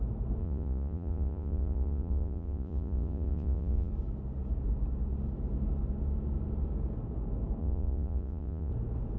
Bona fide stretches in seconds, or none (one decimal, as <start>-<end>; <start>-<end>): 0.0-0.4; 3.9-7.6; 8.7-9.2